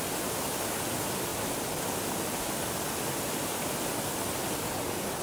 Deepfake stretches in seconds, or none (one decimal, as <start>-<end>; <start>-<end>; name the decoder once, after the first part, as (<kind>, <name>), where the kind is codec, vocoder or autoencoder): none